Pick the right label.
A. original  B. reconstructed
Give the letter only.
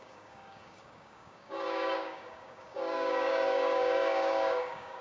B